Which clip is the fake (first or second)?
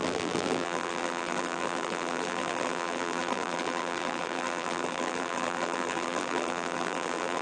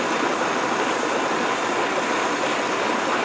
first